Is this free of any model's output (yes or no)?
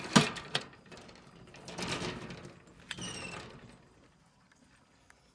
yes